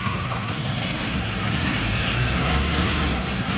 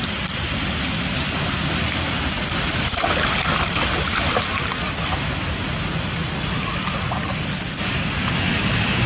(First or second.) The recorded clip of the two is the second